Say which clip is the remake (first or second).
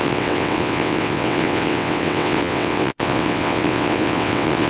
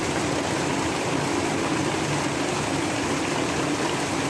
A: first